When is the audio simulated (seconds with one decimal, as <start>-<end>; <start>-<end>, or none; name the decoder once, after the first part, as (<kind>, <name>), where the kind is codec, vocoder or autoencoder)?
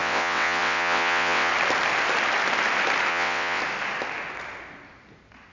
0.0-1.5 (vocoder, WaveNeXt); 3.1-3.6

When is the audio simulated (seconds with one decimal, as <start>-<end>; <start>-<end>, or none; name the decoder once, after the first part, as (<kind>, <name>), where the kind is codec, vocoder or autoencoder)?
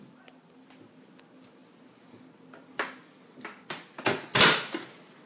none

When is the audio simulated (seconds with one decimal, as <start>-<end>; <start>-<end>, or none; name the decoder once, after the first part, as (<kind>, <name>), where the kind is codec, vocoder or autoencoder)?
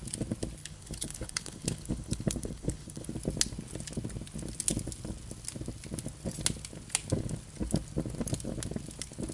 0.6-3.1 (codec, HILCodec)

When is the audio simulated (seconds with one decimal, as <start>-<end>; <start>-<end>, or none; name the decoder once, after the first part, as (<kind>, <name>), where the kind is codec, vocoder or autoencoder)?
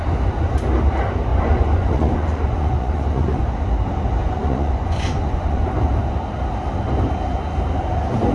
1.3-3.4 (vocoder, Vocos); 4.2-5.7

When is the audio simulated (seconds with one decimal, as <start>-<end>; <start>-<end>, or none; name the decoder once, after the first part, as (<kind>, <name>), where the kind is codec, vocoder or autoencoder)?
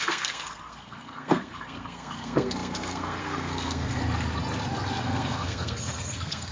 0.0-4.0 (codec, SNAC); 5.0-6.5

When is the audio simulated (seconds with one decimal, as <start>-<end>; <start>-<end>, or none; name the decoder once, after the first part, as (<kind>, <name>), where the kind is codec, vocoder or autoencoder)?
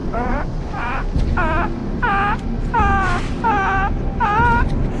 0.0-1.0 (vocoder, Vocos)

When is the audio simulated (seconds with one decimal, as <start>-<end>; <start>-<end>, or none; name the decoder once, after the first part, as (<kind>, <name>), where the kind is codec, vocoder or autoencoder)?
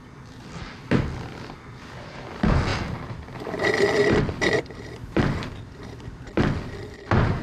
2.7-5.9 (vocoder, BigVGAN v2)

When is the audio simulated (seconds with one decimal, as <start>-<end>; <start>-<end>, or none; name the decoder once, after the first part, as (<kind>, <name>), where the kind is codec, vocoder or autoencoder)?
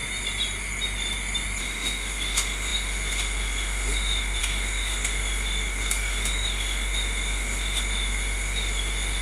1.6-9.2 (autoencoder, DAC-VAE)